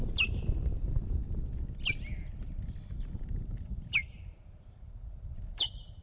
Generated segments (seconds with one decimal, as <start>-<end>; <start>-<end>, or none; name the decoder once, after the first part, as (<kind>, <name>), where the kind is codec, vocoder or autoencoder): 0.0-1.2 (vocoder, BigVGAN v2); 3.4-6.0